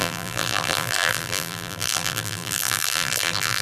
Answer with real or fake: fake